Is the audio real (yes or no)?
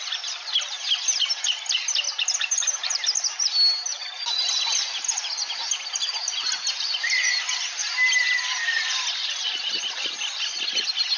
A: yes